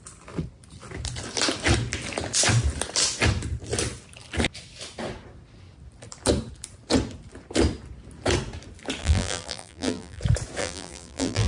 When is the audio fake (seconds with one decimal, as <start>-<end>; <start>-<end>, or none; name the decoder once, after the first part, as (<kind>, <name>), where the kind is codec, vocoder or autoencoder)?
9.0-10.2 (vocoder, BigVGAN v2); 10.6-11.5